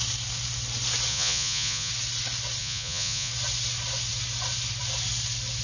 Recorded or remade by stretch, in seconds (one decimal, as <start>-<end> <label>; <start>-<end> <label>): 0.0-1.1 recorded; 1.1-1.9 remade; 1.9-2.6 recorded; 2.6-3.3 remade; 3.3-5.6 recorded